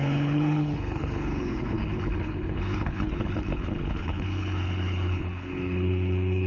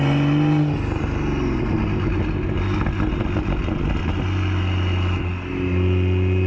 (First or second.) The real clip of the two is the second